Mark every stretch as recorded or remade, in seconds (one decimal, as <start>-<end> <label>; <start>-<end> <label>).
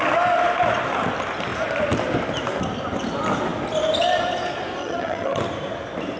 0.0-4.8 recorded; 4.8-5.4 remade; 5.4-6.2 recorded